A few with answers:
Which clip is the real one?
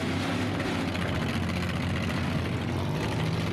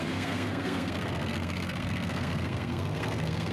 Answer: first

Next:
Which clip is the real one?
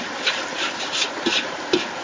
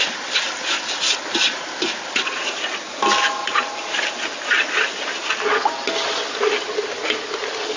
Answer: second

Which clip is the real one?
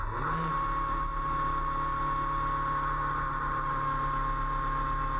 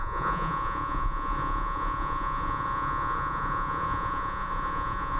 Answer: first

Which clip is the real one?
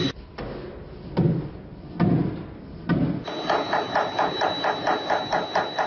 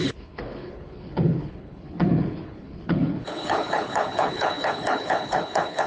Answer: first